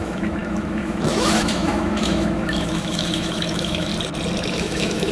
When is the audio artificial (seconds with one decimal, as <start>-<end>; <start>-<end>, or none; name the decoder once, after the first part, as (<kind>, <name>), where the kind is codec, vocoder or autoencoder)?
0.0-3.9 (autoencoder, DAC-VAE); 4.5-5.1